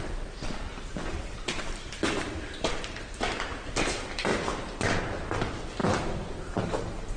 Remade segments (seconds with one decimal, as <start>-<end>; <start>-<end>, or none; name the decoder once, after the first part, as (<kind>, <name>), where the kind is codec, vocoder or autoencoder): 0.7-2.7 (vocoder, BigVGAN v2); 4.3-5.0; 5.8-6.6